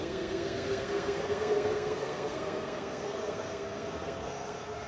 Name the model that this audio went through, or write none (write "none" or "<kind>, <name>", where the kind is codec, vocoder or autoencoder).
codec, SNAC